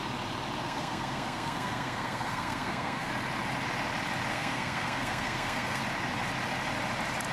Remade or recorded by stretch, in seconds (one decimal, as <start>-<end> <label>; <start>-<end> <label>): 0.0-0.6 recorded; 0.6-3.1 remade; 3.1-4.3 recorded; 4.3-5.8 remade; 5.8-7.3 recorded